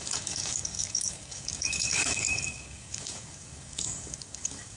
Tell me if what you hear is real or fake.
fake